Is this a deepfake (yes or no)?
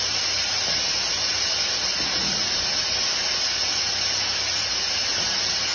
no